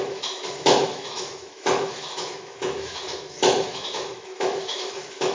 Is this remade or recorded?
remade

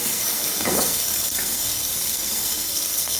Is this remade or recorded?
remade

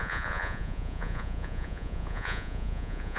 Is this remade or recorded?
remade